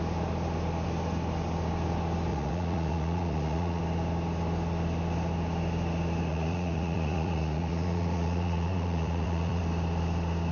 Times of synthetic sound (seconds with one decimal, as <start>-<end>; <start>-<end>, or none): 2.3-3.8; 6.3-9.6